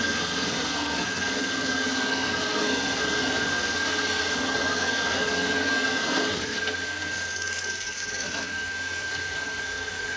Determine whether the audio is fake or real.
fake